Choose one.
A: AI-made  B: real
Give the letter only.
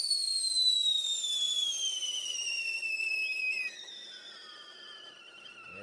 B